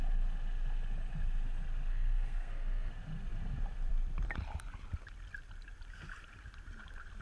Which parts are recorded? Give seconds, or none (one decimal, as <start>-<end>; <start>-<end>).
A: 0.0-1.9; 2.9-7.2